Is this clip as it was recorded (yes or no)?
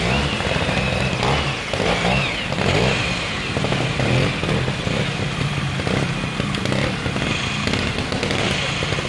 yes